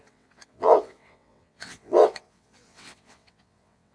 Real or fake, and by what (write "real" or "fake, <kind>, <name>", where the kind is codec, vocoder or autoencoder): fake, vocoder, WaveNeXt